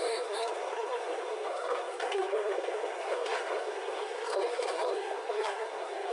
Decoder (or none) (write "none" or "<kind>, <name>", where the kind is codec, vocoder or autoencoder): codec, SNAC